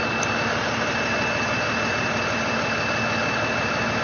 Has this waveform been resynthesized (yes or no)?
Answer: no